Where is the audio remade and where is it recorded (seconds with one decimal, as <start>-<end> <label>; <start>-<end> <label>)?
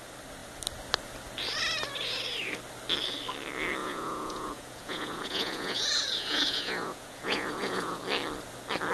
0.0-3.8 recorded; 3.8-8.0 remade; 8.0-8.9 recorded